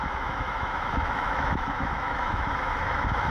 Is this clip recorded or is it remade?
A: remade